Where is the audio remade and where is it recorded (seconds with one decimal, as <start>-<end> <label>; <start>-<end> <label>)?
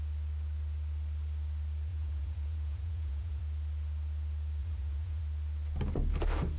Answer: 0.0-1.9 recorded; 1.9-3.4 remade; 3.4-4.6 recorded; 4.6-5.2 remade; 5.2-6.6 recorded